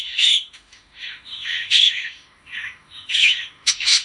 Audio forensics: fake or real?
fake